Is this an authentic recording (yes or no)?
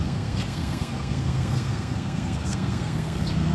no